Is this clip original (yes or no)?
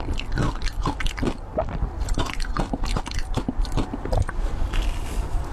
no